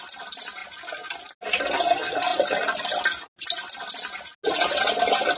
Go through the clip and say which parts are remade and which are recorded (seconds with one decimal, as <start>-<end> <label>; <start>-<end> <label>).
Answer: 0.0-5.4 recorded